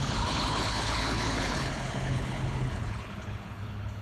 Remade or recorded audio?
remade